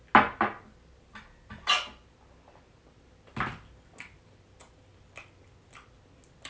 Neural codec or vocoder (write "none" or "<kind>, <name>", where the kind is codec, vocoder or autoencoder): none